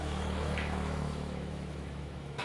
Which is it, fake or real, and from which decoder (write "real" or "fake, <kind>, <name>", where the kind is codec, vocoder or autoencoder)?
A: fake, autoencoder, DAC-VAE